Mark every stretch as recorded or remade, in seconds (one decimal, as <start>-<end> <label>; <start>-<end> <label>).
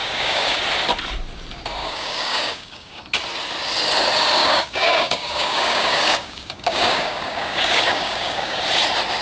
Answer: 0.0-0.6 remade; 0.6-1.8 recorded; 1.8-3.0 remade; 3.0-4.4 recorded; 4.4-8.6 remade; 8.6-9.2 recorded